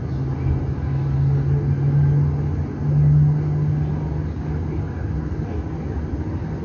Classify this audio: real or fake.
real